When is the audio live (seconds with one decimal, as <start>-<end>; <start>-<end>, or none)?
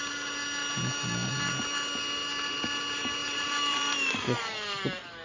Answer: 0.0-3.2; 4.4-5.2